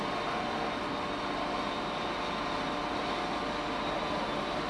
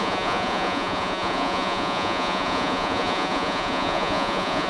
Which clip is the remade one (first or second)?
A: second